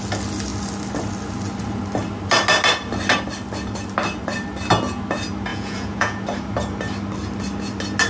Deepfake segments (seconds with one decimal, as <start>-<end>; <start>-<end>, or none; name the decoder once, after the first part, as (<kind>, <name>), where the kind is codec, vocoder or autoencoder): 5.5-6.2 (vocoder, Vocos)